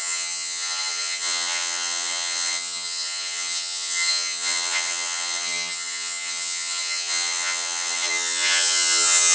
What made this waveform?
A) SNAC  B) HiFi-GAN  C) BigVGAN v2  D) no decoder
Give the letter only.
B